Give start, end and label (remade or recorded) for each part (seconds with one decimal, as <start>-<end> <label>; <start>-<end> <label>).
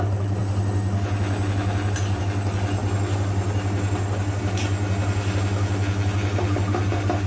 0.0-7.3 recorded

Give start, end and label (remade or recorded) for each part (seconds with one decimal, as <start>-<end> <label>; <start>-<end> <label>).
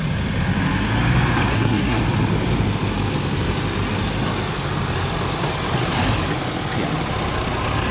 0.0-1.5 recorded; 1.5-2.0 remade; 2.0-7.9 recorded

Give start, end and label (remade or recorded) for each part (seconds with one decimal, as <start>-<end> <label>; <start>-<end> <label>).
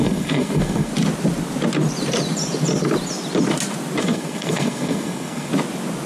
0.0-0.9 remade; 0.9-4.0 recorded; 4.0-5.5 remade; 5.5-6.1 recorded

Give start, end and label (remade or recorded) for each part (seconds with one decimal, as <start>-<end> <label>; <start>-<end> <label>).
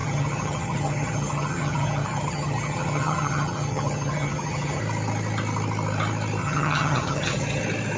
0.0-4.8 remade; 4.8-6.4 recorded; 6.4-7.6 remade; 7.6-8.0 recorded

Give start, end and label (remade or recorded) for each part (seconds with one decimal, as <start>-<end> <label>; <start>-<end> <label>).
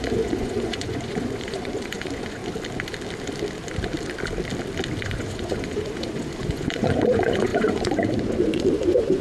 0.0-2.4 remade; 2.4-5.0 recorded; 5.0-9.2 remade